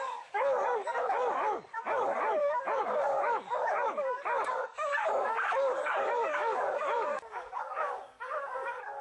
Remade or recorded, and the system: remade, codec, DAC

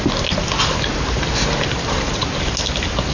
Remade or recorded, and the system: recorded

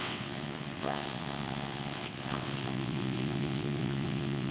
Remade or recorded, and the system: remade, vocoder, WaveNeXt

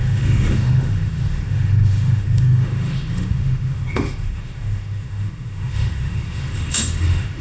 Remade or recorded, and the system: remade, autoencoder, DAC-VAE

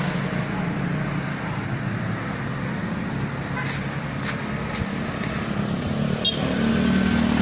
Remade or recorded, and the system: recorded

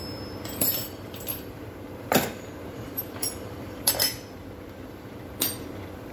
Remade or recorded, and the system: remade, vocoder, BigVGAN v2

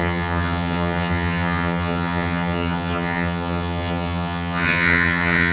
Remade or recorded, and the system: remade, vocoder, HiFi-GAN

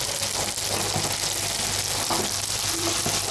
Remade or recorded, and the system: recorded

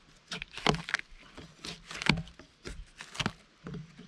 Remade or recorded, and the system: recorded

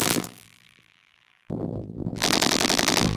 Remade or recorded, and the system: remade, vocoder, BigVGAN v2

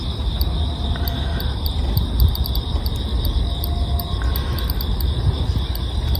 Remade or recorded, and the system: recorded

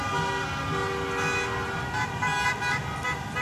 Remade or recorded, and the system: recorded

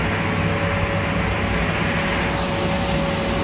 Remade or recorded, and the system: recorded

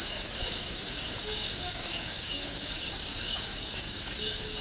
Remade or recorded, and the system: remade, codec, DAC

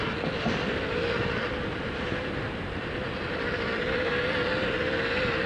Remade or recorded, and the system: remade, vocoder, BigVGAN v2